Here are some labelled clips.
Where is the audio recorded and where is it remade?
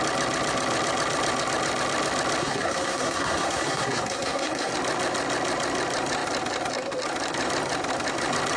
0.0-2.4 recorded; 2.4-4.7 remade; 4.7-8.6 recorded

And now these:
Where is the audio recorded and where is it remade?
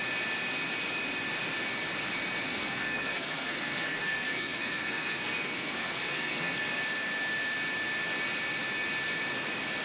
0.0-2.5 recorded; 2.5-6.8 remade; 6.8-9.8 recorded